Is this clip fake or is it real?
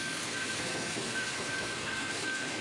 fake